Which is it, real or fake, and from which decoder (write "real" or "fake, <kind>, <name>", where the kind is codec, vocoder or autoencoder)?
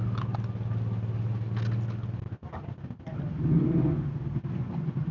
real